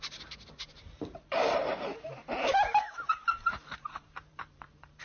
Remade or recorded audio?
remade